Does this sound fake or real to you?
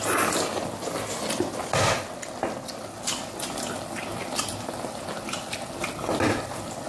real